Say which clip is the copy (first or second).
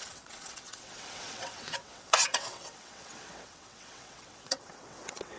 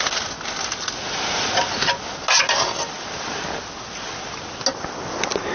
first